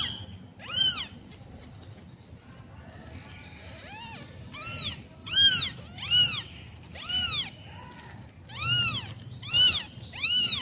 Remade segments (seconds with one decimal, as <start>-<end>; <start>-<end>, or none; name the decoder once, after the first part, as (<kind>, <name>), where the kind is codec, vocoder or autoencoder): none